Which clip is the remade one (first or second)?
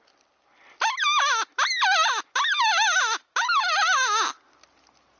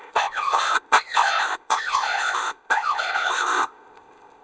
second